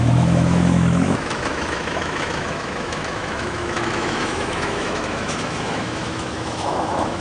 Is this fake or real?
fake